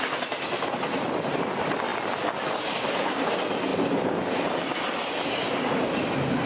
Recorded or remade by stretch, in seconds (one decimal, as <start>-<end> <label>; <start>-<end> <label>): 0.0-6.5 recorded